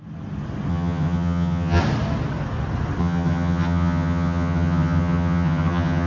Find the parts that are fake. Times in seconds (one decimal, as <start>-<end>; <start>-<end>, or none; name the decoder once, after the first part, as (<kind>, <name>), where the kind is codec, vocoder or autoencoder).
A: 0.7-1.8 (vocoder, HiFi-GAN); 3.0-6.1